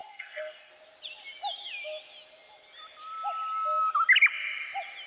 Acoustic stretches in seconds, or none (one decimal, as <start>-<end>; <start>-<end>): 0.7-5.1